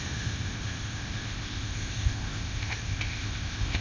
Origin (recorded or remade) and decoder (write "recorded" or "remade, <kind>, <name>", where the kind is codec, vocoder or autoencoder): remade, codec, ZipCodec